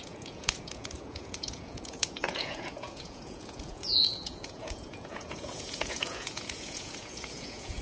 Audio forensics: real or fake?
fake